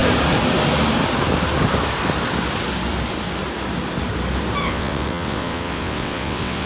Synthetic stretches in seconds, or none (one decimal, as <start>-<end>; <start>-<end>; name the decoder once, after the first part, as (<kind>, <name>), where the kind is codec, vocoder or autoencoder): 4.6-6.7 (vocoder, WaveNeXt)